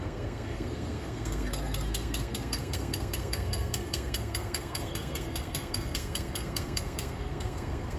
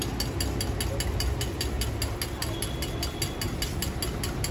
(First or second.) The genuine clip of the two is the second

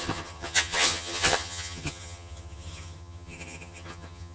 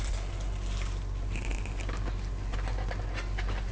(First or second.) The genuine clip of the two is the second